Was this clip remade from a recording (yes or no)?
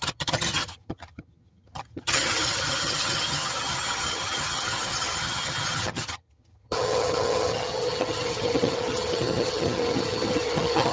yes